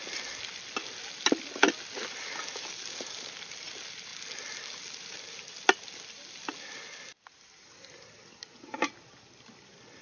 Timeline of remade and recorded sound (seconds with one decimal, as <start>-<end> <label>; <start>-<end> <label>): 0.0-10.0 recorded